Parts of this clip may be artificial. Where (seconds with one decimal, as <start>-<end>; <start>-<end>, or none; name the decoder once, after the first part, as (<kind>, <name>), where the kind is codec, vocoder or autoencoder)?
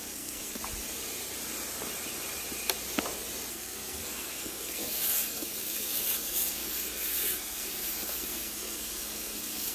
0.0-0.6 (codec, SNAC); 3.5-9.7